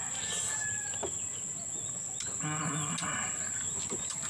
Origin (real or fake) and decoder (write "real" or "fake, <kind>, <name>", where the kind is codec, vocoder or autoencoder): real